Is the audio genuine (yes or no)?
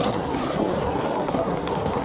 no